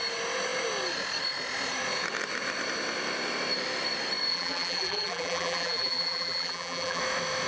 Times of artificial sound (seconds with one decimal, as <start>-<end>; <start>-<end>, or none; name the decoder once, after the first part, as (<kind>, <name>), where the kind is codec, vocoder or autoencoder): 4.3-7.0 (vocoder, BigVGAN v2)